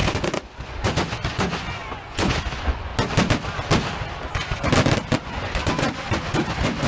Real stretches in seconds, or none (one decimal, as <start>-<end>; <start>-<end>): 2.9-4.3; 4.7-5.2